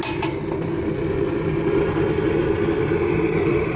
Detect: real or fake real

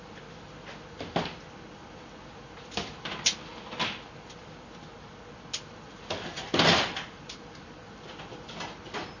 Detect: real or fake real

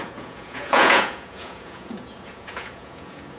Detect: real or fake fake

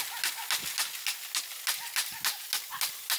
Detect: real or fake real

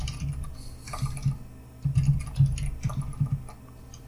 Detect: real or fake real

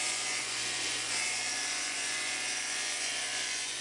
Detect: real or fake fake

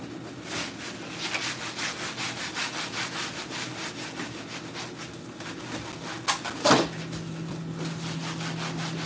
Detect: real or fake real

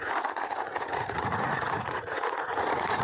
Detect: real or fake fake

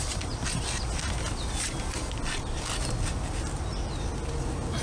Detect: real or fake real